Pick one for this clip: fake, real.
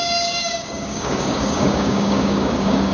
fake